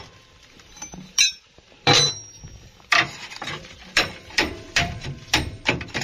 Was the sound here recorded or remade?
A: remade